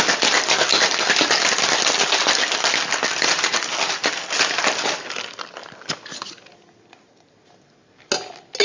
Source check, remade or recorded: recorded